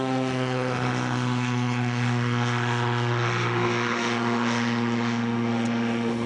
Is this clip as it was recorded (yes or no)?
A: no